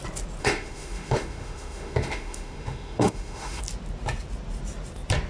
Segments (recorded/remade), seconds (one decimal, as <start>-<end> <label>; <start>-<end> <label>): 0.0-0.4 recorded; 0.4-3.6 remade; 3.6-5.3 recorded